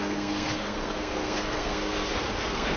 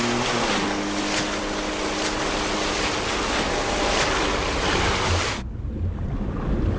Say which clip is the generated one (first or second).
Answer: first